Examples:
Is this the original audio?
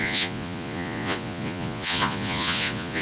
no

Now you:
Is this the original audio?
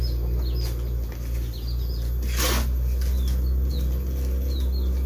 yes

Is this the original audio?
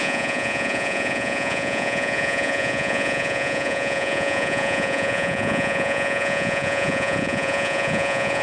no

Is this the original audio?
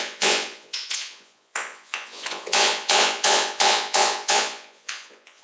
no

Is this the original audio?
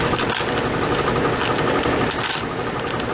yes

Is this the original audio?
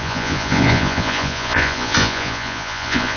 no